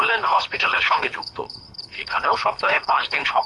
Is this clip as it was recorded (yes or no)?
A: no